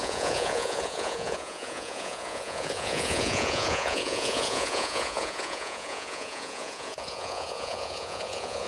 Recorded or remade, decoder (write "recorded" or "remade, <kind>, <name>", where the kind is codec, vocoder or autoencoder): remade, vocoder, Vocos